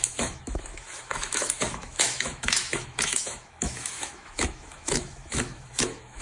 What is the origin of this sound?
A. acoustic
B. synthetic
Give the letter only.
B